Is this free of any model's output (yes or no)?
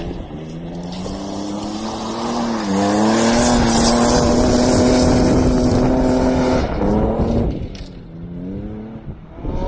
yes